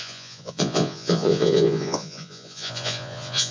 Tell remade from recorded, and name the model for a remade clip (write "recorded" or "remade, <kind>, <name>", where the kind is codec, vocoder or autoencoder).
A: remade, vocoder, Vocos